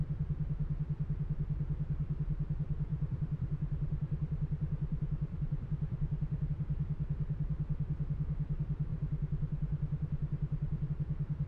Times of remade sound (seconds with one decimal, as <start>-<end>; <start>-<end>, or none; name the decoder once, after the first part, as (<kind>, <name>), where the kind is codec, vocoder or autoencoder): 2.9-6.5 (vocoder, BigVGAN v2); 8.9-10.9